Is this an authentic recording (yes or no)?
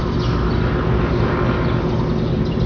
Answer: yes